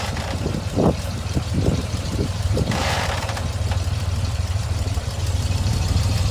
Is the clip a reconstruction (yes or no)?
yes